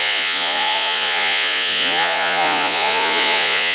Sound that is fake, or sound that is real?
fake